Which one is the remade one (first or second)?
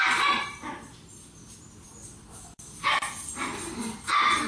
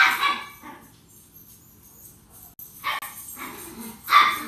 first